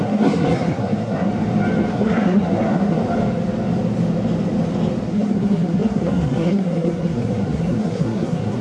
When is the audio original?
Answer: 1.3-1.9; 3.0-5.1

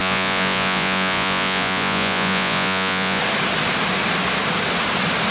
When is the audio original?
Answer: 3.2-5.3

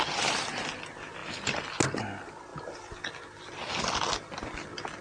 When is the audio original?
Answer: 0.0-5.0

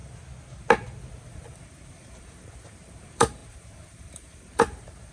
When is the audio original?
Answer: 0.0-1.2

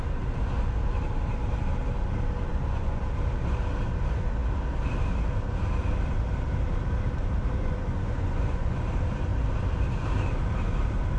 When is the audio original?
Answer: 0.0-2.5; 3.0-7.6; 8.8-11.2

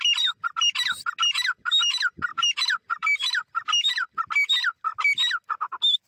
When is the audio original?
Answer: 0.0-2.3; 3.9-6.1

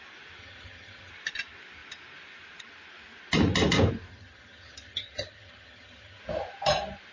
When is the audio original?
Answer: 0.0-0.4; 1.1-4.1; 6.2-7.1